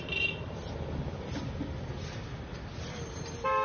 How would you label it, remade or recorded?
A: recorded